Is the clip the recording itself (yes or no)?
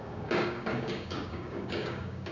no